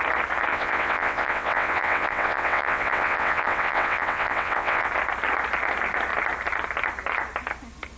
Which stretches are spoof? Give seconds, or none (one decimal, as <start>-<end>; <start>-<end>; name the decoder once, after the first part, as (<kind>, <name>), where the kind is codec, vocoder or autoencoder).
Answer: 0.5-4.9 (vocoder, WaveNeXt)